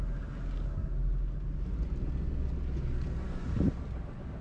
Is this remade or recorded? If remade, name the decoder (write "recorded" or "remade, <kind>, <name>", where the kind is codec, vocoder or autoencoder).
recorded